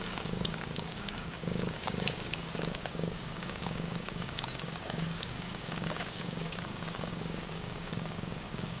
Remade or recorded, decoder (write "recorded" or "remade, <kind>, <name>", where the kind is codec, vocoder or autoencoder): remade, codec, DAC